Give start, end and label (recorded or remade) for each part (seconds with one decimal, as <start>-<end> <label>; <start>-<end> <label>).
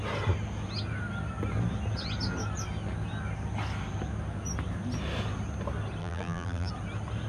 0.0-6.0 recorded; 6.0-6.7 remade; 6.7-7.3 recorded